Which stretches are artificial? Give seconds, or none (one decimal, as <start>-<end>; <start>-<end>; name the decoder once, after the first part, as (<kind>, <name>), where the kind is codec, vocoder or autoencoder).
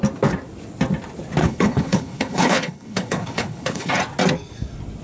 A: 1.4-3.9 (codec, HILCodec)